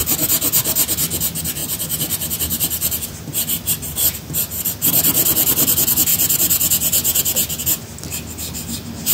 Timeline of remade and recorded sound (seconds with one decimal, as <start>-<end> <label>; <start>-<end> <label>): 0.0-1.6 recorded; 1.6-4.7 remade; 4.7-6.1 recorded; 6.1-7.2 remade; 7.2-9.1 recorded